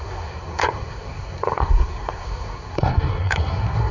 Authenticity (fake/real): fake